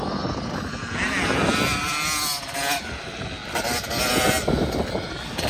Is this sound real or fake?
real